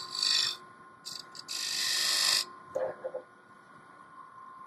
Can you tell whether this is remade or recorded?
recorded